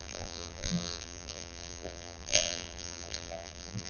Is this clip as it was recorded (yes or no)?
no